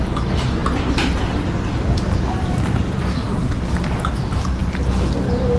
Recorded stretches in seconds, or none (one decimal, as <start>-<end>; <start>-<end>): 0.0-3.1; 3.6-5.6